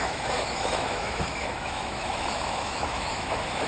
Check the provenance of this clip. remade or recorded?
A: remade